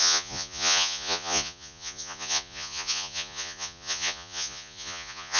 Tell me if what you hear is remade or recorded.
remade